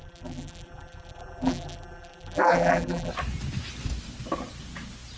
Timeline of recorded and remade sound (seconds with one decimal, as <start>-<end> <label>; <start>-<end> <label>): 0.0-3.1 remade; 3.1-5.2 recorded